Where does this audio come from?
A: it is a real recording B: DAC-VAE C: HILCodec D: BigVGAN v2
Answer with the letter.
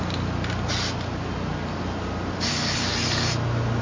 A